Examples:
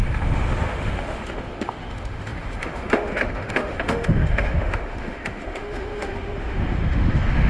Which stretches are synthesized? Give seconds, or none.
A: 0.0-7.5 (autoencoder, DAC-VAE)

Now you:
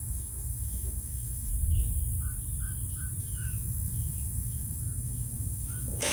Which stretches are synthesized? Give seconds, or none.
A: 0.0-1.5 (autoencoder, DAC-VAE); 3.2-6.1

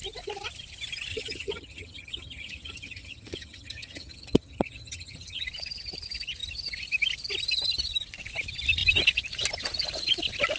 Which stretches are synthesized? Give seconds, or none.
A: 1.1-5.4 (vocoder, HiFi-GAN)